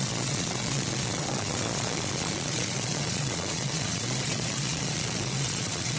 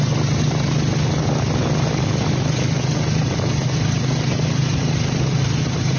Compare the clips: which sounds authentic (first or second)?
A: second